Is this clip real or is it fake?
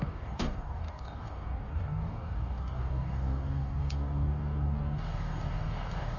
fake